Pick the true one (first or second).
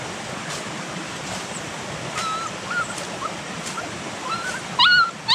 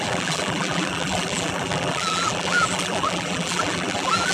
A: first